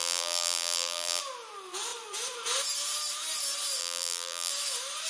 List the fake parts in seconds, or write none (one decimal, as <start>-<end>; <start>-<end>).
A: 0.0-1.2; 3.8-4.5